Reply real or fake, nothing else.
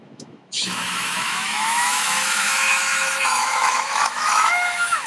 fake